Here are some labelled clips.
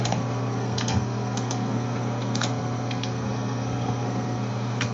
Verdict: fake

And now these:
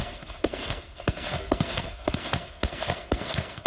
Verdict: fake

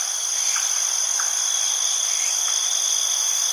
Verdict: real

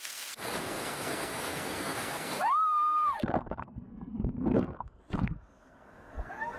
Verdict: fake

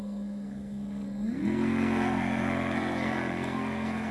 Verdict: fake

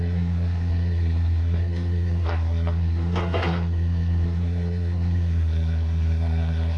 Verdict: fake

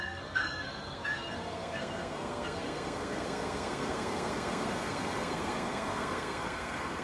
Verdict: fake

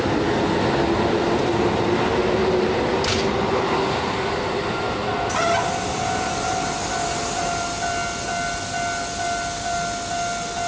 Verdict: real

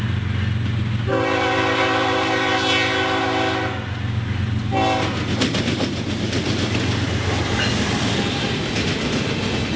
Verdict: real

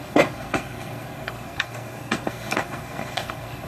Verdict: fake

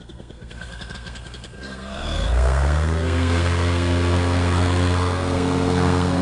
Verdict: fake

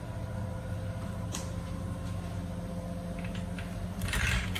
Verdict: real